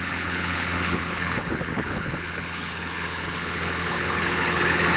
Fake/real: fake